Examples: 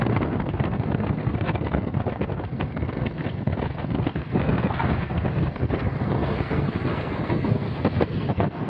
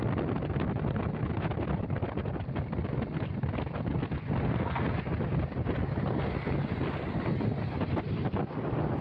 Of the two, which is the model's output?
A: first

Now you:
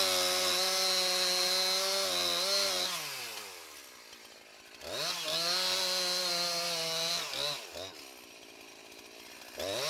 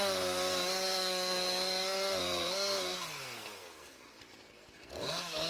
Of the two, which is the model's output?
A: second